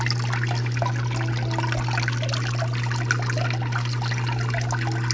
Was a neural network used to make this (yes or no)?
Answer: no